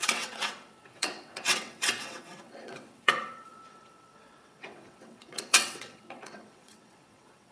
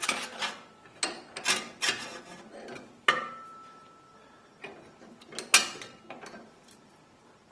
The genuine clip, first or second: second